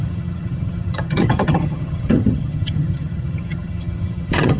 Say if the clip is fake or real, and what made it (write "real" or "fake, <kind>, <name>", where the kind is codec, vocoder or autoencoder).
fake, vocoder, HiFi-GAN